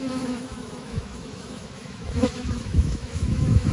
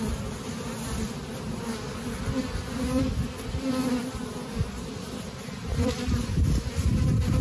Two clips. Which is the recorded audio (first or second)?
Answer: second